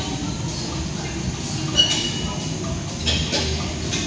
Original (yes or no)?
yes